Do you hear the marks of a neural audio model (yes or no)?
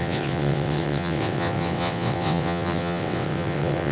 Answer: yes